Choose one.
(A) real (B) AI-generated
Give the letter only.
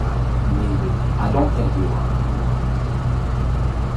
A